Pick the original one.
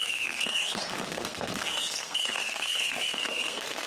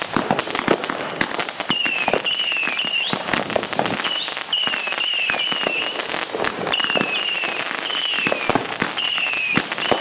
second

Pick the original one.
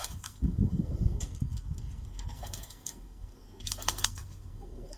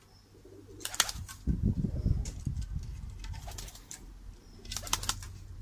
second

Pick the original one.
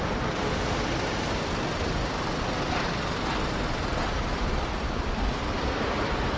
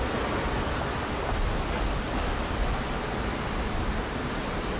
second